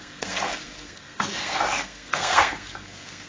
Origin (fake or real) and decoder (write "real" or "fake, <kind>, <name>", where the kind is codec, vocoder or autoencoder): fake, codec, SNAC